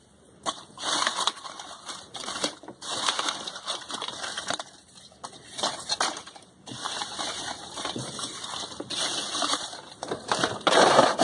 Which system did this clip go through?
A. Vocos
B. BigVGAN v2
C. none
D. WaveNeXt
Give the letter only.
B